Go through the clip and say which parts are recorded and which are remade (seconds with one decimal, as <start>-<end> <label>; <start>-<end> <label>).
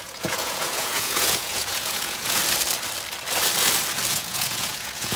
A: 0.0-2.4 remade; 2.4-4.1 recorded; 4.1-5.2 remade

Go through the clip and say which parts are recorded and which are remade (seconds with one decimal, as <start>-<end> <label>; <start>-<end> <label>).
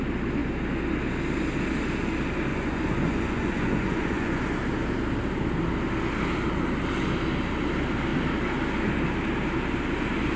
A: 0.0-2.5 recorded; 2.5-4.4 remade; 4.4-10.4 recorded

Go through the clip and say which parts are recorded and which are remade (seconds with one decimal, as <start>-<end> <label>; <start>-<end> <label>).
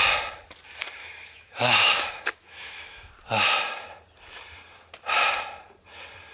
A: 0.0-1.0 recorded; 1.0-3.1 remade; 3.1-6.3 recorded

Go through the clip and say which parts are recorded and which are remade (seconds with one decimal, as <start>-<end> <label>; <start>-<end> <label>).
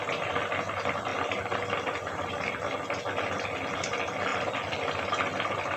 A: 0.0-1.1 recorded; 1.1-2.3 remade; 2.3-5.8 recorded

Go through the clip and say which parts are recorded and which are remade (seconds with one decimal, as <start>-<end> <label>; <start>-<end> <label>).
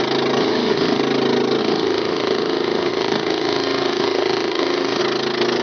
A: 0.0-0.4 recorded; 0.4-1.0 remade; 1.0-1.6 recorded; 1.6-5.0 remade; 5.0-5.6 recorded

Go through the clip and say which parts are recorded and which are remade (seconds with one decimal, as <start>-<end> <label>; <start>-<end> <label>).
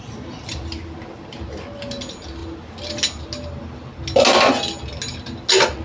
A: 0.0-5.8 recorded